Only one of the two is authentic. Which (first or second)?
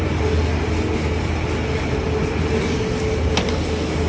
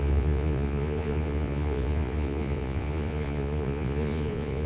first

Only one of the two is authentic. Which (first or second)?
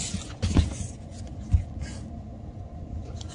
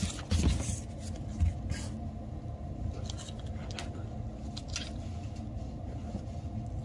second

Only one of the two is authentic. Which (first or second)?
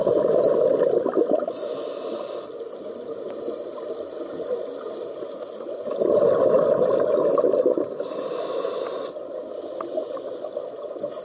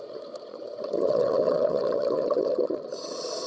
first